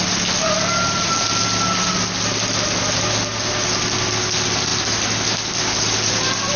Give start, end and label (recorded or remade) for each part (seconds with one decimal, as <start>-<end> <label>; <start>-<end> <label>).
0.0-6.6 recorded